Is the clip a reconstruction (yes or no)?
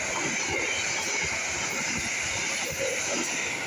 no